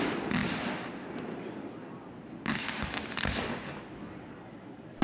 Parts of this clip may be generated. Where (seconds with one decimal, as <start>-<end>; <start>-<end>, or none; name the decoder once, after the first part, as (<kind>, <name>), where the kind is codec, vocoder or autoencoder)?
none